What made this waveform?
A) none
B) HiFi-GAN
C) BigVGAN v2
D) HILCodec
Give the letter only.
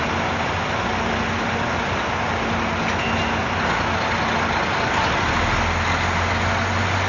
A